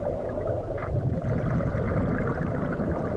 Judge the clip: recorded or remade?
recorded